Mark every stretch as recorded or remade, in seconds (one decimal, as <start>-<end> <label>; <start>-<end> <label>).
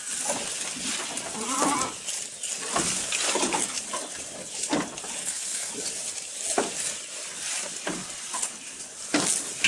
0.0-5.2 recorded; 5.2-5.7 remade; 5.7-9.7 recorded